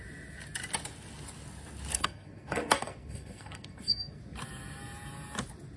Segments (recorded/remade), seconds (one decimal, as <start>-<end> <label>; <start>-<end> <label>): 0.0-1.9 recorded; 1.9-4.2 remade; 4.2-5.8 recorded